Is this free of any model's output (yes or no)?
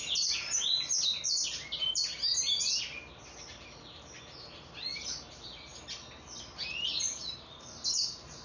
yes